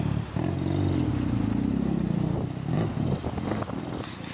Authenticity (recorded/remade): recorded